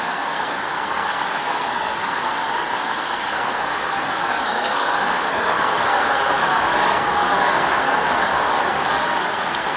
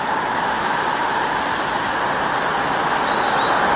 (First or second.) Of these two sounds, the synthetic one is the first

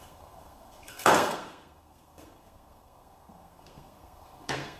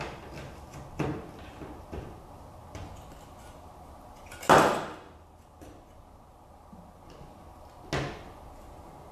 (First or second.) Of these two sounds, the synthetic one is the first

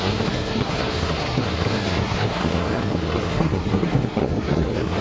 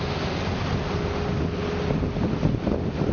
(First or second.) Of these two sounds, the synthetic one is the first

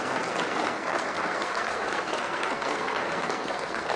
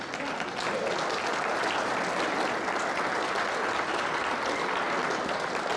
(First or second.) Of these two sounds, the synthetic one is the first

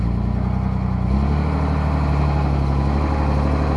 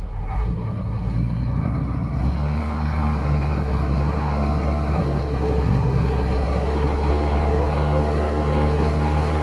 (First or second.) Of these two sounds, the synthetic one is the second